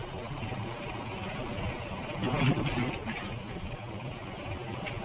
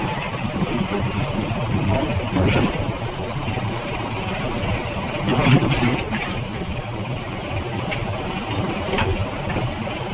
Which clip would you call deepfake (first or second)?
second